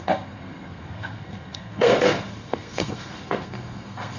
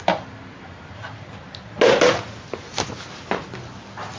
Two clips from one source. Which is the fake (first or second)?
first